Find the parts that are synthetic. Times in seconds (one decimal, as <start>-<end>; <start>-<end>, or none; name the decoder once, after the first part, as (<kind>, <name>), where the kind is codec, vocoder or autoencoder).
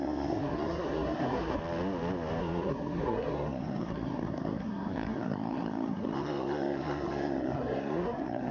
0.0-1.6 (codec, SNAC); 2.4-8.5